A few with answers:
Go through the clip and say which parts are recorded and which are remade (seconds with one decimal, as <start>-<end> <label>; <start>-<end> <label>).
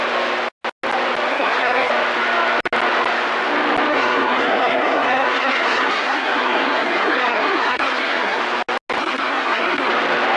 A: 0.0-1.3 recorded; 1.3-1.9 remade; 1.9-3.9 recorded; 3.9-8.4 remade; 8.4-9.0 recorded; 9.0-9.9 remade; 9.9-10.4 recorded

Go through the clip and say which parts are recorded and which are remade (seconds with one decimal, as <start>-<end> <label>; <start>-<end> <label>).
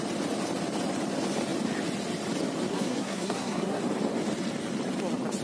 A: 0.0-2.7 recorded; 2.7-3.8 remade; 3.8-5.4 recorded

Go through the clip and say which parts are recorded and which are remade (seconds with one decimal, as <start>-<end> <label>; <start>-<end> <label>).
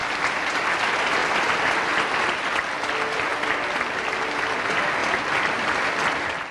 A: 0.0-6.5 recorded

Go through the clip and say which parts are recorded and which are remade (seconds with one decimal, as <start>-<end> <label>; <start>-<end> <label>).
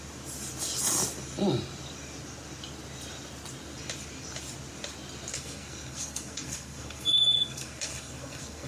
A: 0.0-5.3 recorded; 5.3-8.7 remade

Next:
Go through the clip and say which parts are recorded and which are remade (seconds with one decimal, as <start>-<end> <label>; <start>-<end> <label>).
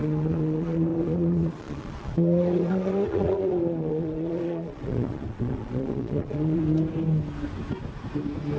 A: 0.0-6.6 remade; 6.6-8.6 recorded